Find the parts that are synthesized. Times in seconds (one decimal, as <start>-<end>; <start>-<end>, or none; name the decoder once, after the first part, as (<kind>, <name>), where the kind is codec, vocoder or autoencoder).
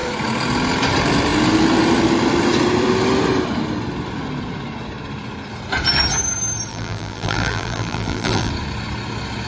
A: 6.7-8.5 (vocoder, BigVGAN v2)